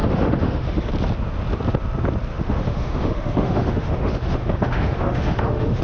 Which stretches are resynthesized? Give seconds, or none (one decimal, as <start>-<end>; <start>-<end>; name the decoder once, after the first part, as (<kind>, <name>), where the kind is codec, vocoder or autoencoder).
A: 0.0-0.9 (autoencoder, DAC-VAE); 2.3-5.8